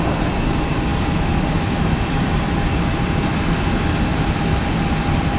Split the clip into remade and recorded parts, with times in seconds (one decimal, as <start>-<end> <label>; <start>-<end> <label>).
0.0-5.4 recorded